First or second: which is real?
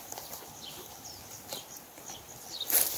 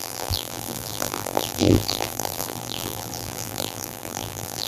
first